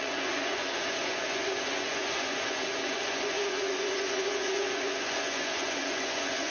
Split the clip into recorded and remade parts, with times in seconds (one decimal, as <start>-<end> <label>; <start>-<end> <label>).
0.0-6.5 remade